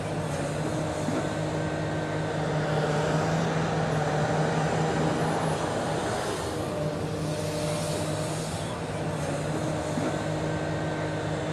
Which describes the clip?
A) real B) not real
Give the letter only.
A